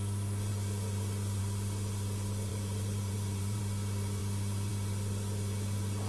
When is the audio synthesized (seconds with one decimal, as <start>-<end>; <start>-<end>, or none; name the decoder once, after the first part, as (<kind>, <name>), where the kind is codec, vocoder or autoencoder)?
2.5-3.6 (vocoder, BigVGAN v2)